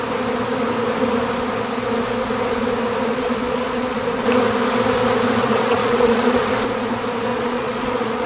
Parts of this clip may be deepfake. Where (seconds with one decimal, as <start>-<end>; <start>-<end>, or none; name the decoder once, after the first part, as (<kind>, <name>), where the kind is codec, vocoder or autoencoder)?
3.1-4.0 (vocoder, Vocos); 5.4-6.5; 7.3-8.3